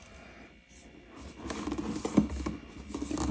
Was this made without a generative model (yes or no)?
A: yes